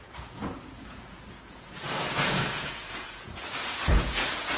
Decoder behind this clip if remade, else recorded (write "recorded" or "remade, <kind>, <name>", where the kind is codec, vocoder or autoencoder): remade, vocoder, Vocos